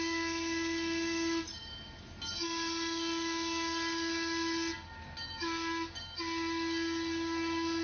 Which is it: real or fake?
real